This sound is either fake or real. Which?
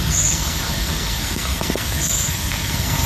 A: fake